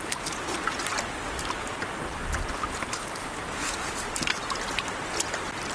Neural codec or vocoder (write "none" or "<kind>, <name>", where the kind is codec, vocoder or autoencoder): none